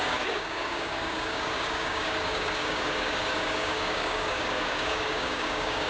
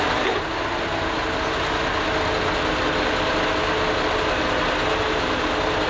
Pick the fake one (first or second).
first